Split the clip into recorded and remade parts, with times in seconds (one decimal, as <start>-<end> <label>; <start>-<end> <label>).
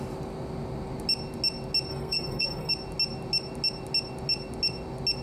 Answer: 0.0-1.9 recorded; 1.9-2.7 remade; 2.7-5.2 recorded